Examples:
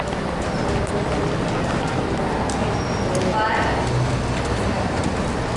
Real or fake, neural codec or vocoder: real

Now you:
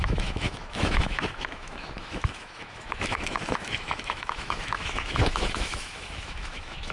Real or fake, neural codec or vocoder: fake, autoencoder, DAC-VAE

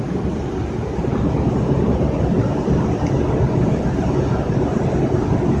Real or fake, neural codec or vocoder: real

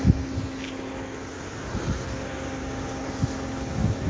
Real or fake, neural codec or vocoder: real